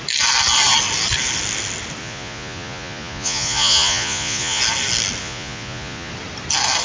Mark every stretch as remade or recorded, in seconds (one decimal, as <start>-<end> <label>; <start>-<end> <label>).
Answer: 0.0-2.0 recorded; 2.0-4.6 remade; 4.6-5.2 recorded; 5.2-6.1 remade; 6.1-6.8 recorded